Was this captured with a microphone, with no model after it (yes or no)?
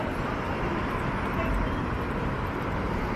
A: yes